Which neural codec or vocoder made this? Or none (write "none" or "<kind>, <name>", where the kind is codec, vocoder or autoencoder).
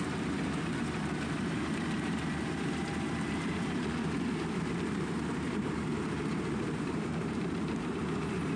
vocoder, BigVGAN v2